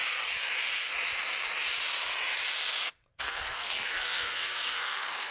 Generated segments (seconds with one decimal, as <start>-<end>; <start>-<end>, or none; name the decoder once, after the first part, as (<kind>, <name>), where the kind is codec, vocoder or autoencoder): 3.2-5.3 (codec, SNAC)